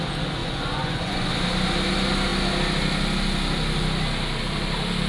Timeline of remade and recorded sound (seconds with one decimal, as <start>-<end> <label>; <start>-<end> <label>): 0.0-0.4 recorded; 0.4-1.3 remade; 1.3-5.1 recorded